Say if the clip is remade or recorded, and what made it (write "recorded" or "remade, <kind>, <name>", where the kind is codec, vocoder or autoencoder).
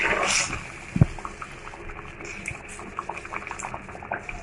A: recorded